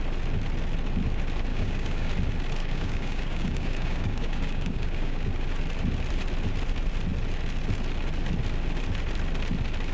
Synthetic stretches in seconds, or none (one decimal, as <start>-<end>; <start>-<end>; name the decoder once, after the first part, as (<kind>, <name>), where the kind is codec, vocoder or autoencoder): 1.5-2.1 (codec, DAC); 2.6-5.3